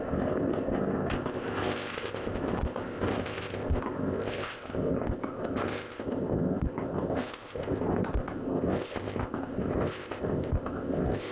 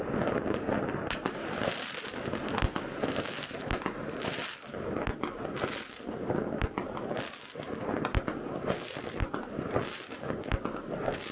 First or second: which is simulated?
first